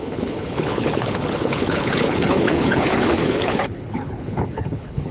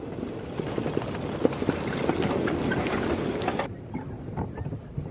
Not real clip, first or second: first